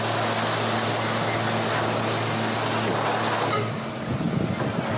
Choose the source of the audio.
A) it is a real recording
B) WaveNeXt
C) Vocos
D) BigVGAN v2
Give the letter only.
A